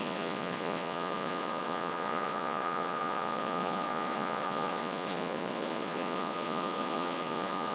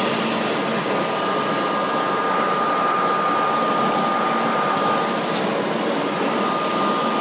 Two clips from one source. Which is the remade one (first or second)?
first